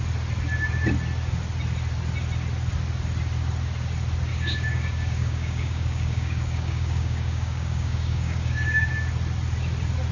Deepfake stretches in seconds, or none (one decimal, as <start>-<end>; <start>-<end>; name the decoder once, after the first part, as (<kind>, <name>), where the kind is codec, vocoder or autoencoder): 4.3-8.9 (codec, DAC)